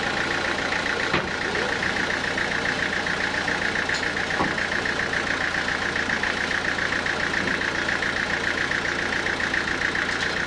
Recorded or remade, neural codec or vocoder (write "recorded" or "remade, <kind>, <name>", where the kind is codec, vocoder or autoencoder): recorded